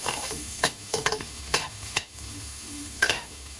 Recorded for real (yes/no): no